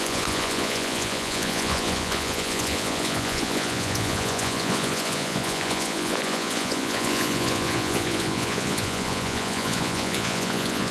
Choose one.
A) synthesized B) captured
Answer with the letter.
A